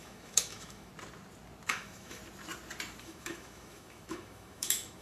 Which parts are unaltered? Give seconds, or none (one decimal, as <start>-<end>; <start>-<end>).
0.9-1.7; 2.2-3.0